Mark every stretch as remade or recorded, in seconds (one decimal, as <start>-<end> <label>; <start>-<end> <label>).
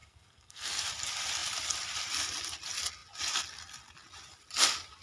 0.0-0.9 remade; 0.9-5.0 recorded